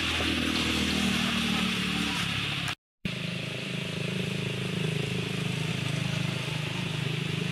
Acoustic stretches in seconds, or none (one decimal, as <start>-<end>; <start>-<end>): 0.0-3.0; 5.7-7.5